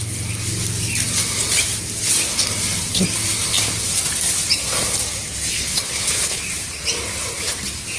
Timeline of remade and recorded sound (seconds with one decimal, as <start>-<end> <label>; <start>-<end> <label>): 0.0-5.5 recorded; 5.5-6.4 remade; 6.4-8.0 recorded